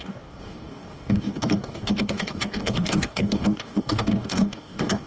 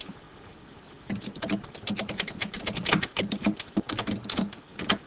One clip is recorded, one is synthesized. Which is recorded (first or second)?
second